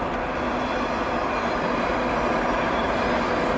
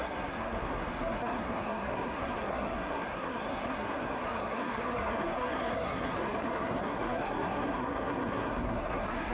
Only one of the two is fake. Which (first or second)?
second